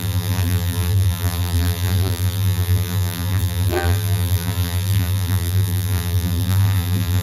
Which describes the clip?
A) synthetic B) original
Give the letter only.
A